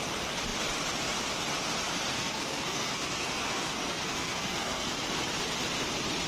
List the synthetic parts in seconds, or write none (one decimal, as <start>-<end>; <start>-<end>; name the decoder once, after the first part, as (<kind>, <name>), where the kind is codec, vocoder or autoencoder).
2.1-5.0 (codec, SNAC)